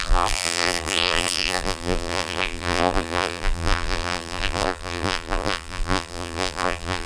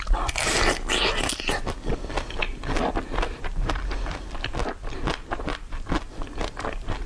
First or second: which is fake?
first